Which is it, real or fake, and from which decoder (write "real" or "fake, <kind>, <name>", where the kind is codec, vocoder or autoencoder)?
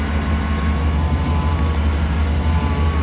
real